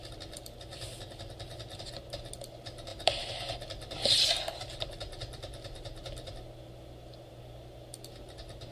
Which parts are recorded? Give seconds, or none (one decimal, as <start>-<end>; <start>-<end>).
0.0-8.7